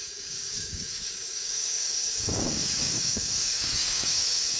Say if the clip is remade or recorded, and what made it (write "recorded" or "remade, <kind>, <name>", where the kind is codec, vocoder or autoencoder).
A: remade, codec, DAC